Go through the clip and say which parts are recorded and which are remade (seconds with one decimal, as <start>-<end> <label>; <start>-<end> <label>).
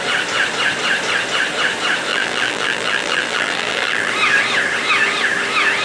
0.0-2.1 recorded; 2.1-4.1 remade; 4.1-5.8 recorded